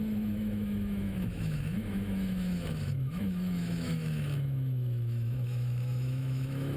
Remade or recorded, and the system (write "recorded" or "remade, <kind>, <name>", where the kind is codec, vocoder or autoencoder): remade, autoencoder, DAC-VAE